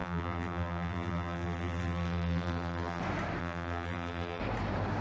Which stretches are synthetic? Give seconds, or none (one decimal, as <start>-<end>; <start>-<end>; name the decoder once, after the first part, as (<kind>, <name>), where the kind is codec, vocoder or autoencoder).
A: 0.0-3.0 (vocoder, BigVGAN v2); 3.4-4.4